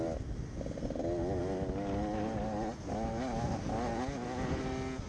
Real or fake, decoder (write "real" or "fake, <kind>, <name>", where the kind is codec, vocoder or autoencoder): real